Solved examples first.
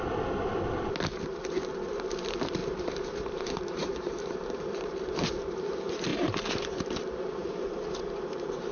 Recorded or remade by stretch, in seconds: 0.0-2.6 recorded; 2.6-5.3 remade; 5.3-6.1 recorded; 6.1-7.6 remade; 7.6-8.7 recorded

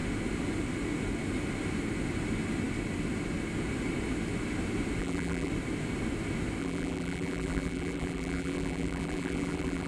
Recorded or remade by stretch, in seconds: 0.0-5.0 recorded; 5.0-5.5 remade; 5.5-6.6 recorded; 6.6-9.9 remade

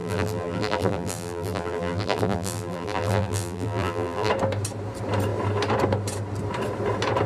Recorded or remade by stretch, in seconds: 0.0-4.3 remade; 4.3-7.3 recorded

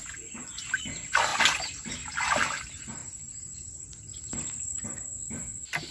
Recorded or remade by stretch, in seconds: 0.0-5.9 recorded

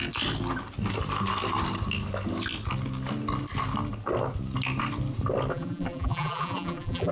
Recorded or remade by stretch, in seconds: 0.0-5.5 recorded; 5.5-7.1 remade